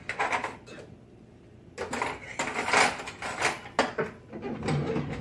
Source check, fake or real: real